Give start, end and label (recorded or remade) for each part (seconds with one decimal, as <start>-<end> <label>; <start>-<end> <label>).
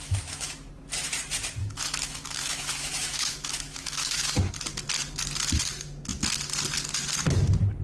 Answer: 0.0-0.7 remade; 0.7-1.6 recorded; 1.6-4.4 remade; 4.4-7.8 recorded